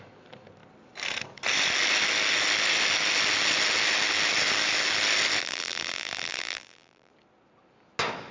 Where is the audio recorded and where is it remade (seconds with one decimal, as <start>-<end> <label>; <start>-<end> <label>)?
0.0-5.4 recorded; 5.4-7.1 remade; 7.1-8.3 recorded